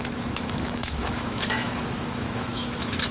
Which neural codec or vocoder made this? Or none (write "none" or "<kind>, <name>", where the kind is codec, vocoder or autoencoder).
autoencoder, DAC-VAE